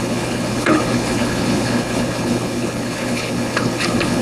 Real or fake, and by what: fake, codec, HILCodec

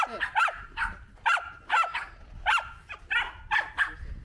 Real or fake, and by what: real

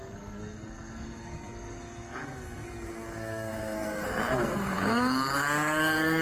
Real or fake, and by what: fake, codec, SNAC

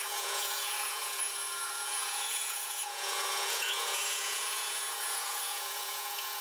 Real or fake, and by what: fake, vocoder, Vocos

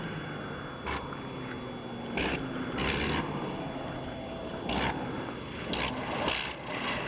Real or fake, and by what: real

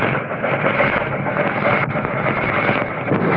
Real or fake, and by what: real